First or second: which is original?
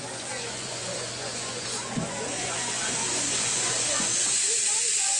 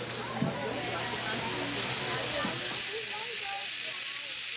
second